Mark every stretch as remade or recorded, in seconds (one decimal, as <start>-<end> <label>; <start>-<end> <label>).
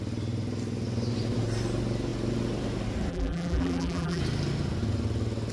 0.0-3.1 recorded; 3.1-4.2 remade; 4.2-5.5 recorded